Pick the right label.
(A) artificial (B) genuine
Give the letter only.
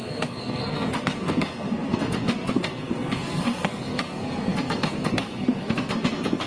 A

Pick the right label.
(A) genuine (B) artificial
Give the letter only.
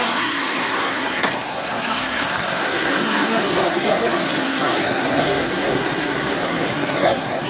B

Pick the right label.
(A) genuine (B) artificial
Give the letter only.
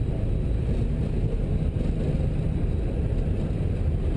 A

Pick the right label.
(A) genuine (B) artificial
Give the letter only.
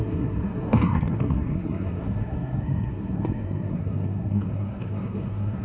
B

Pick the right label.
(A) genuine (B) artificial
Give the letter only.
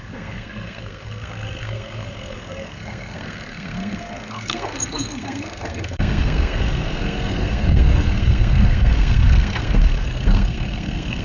B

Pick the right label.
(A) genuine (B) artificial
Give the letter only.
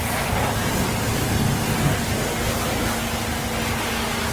A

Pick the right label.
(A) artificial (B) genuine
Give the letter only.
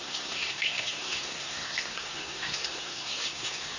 A